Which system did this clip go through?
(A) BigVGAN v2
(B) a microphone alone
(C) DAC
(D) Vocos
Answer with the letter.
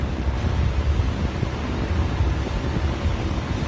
B